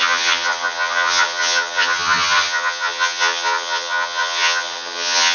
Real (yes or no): no